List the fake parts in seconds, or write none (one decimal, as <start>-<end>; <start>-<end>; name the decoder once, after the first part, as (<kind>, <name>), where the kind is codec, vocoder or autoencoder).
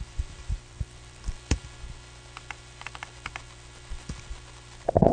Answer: 0.0-1.6 (vocoder, BigVGAN v2)